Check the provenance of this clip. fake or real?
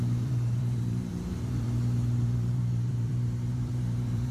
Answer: fake